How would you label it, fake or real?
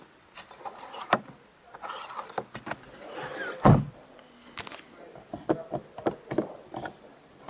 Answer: real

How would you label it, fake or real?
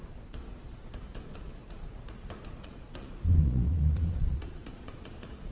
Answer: fake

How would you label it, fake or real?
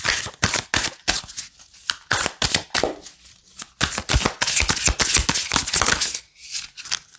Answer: real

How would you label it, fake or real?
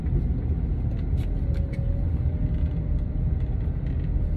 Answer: real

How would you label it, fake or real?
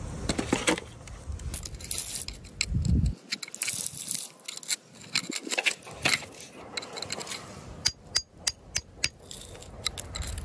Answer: real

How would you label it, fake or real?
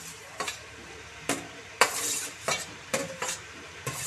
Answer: fake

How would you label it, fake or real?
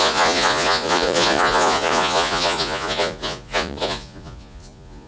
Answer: fake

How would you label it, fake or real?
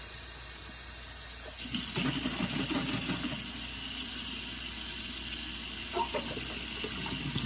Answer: real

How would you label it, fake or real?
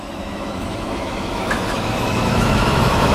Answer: fake